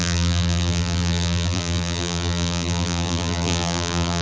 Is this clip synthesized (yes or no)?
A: yes